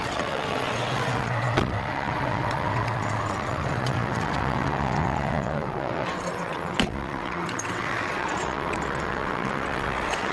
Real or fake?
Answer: fake